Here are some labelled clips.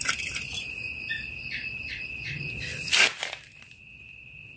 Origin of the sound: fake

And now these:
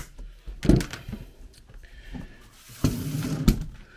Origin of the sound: real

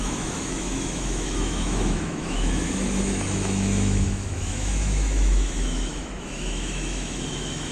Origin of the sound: fake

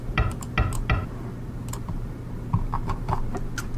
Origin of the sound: real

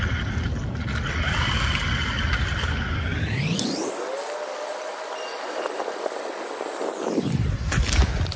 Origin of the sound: real